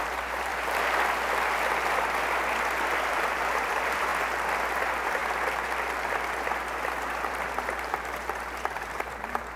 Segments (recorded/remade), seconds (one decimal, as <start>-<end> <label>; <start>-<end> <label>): 0.0-0.5 remade; 0.5-3.1 recorded; 3.1-4.1 remade; 4.1-4.6 recorded; 4.6-5.2 remade; 5.2-7.3 recorded; 7.3-9.6 remade